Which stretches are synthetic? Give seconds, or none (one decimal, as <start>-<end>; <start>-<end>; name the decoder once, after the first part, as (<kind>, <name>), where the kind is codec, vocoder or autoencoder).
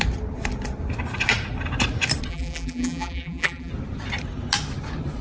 2.3-3.7 (vocoder, BigVGAN v2)